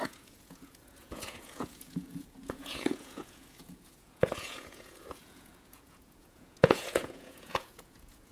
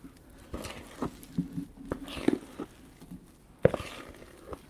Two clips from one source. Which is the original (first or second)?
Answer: second